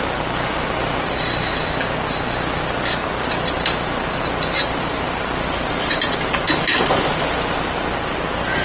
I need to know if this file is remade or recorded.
recorded